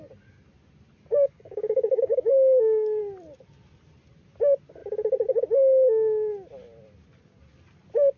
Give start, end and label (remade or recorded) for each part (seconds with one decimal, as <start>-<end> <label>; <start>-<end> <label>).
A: 0.0-1.1 recorded; 1.1-3.0 remade; 3.0-8.2 recorded